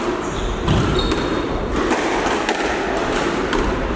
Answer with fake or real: fake